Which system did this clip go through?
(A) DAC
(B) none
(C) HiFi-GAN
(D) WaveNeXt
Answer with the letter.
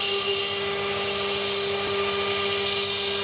B